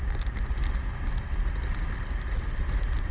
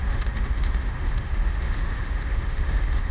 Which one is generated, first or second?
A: second